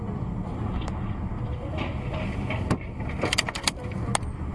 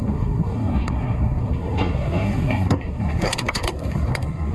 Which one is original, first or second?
first